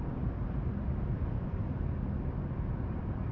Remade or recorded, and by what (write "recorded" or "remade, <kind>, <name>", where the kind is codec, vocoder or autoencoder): recorded